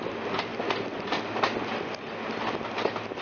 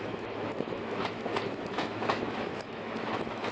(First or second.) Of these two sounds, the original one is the first